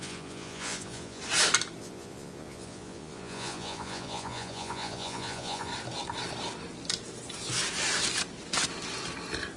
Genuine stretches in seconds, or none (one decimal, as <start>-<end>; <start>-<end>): 1.2-1.8; 5.7-9.6